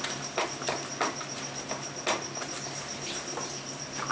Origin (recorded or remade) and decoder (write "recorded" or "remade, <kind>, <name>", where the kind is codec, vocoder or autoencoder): recorded